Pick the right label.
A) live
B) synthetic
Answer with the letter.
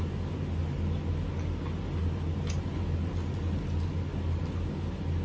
A